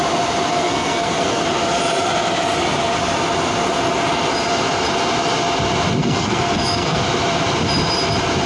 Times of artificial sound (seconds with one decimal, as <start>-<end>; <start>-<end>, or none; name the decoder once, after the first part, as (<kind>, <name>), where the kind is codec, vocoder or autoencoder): 0.5-1.4 (codec, SNAC); 6.0-7.0